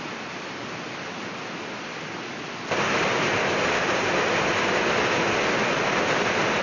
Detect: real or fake real